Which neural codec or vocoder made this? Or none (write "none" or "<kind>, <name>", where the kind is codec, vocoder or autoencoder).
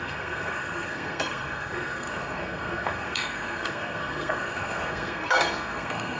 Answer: codec, SNAC